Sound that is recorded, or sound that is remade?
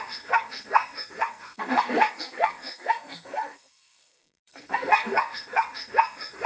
remade